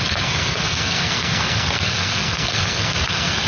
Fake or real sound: fake